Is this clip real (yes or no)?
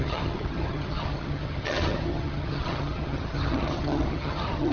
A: no